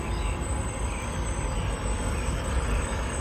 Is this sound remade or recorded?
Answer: remade